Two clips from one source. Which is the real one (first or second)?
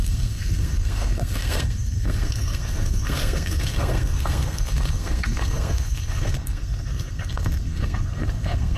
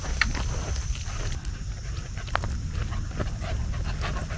second